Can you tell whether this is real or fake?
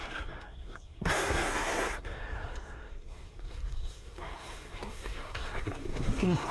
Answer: fake